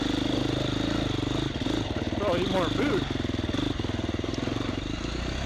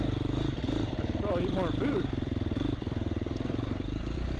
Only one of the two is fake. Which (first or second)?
second